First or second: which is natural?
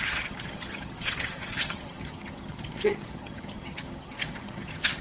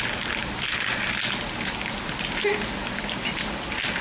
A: second